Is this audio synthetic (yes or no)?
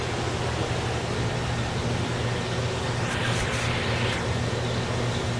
no